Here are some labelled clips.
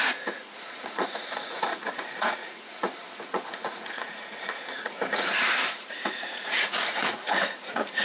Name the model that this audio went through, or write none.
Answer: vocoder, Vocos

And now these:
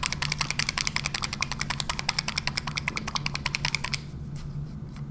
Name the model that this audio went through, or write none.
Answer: none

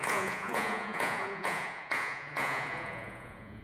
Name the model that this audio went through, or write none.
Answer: vocoder, Vocos